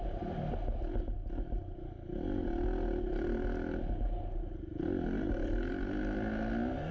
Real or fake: real